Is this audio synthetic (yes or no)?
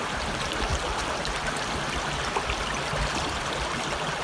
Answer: no